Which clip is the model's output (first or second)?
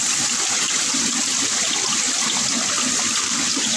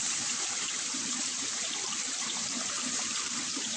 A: second